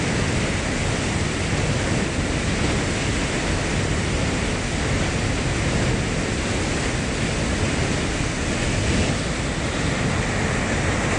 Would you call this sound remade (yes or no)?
no